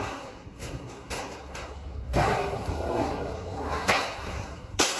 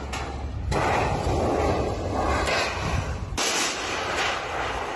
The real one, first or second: second